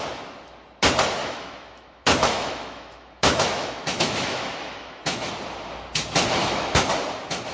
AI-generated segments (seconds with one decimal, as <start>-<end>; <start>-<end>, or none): 1.2-5.3; 6.4-6.9